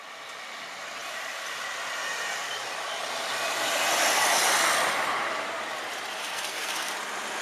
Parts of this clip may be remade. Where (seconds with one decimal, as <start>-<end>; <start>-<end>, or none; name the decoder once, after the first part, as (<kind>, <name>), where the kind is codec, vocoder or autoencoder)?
6.2-6.9 (codec, SNAC)